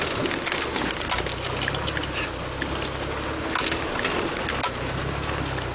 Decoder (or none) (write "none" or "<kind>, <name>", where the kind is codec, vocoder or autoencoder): none